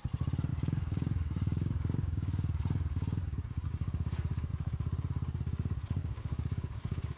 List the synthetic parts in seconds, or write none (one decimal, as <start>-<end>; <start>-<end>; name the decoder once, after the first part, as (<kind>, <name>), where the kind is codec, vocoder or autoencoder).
0.5-4.5 (codec, DAC); 6.0-7.2